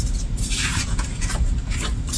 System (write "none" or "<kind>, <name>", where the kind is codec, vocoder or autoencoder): vocoder, BigVGAN v2